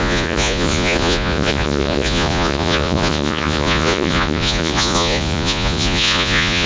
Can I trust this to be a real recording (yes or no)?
no